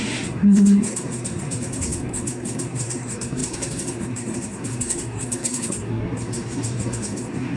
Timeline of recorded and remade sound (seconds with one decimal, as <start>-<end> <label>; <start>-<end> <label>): 0.0-7.6 remade

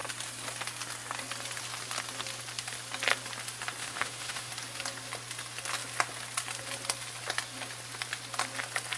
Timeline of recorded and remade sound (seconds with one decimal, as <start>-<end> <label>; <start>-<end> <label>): 0.0-3.8 recorded; 3.8-4.5 remade; 4.5-9.0 recorded

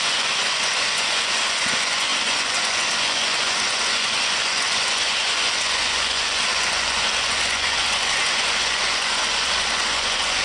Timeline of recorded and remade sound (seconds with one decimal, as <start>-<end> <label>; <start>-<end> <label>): 0.0-10.4 remade

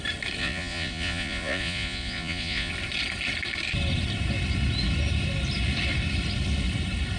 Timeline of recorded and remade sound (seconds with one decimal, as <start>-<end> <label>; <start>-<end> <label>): 0.0-0.4 recorded; 0.4-2.7 remade; 2.7-7.2 recorded

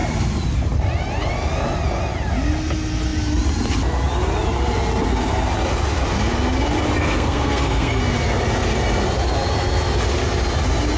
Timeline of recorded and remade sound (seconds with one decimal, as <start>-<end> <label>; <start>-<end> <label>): 0.0-7.0 recorded; 7.0-8.0 remade; 8.0-11.0 recorded